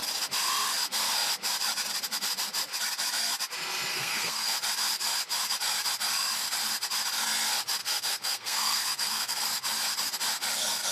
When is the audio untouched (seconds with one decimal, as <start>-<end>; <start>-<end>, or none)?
0.0-3.9; 4.5-7.8; 9.4-10.9